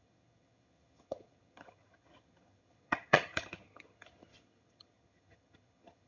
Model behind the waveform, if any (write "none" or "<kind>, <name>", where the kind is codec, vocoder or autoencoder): vocoder, HiFi-GAN